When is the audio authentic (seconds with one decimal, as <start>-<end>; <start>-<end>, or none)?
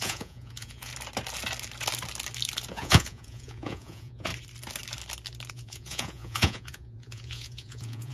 0.9-2.7; 4.3-5.5